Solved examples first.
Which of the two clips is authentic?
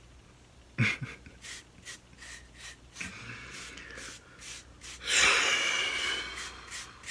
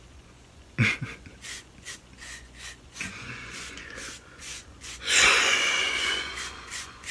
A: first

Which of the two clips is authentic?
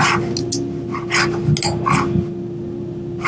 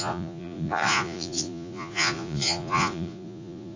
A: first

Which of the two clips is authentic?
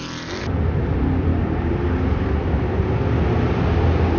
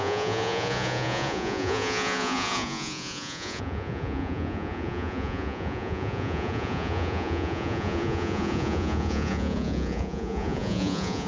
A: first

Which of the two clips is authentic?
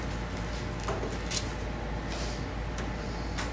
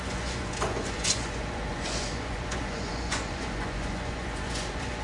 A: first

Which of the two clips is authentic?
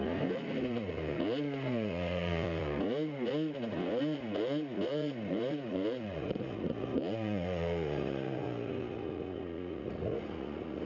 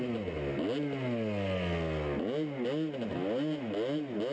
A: second